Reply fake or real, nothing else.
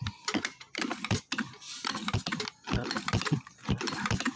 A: real